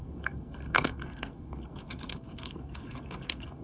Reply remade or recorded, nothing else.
remade